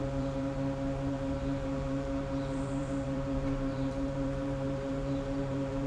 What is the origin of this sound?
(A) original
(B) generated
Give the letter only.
B